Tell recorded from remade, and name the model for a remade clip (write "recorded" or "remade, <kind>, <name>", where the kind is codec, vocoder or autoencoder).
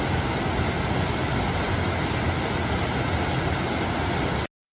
recorded